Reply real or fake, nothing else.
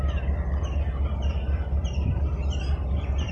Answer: real